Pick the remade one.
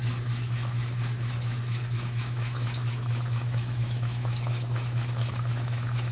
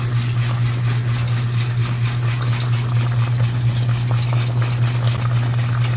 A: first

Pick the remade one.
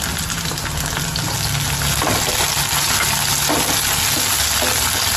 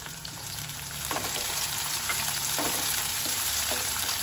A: second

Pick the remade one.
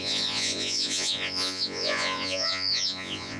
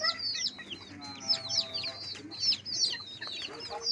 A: first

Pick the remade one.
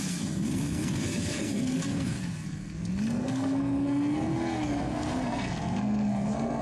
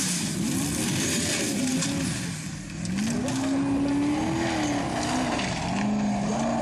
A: first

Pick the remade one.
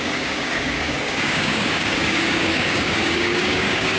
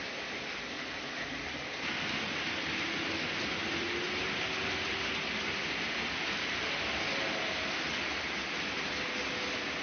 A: first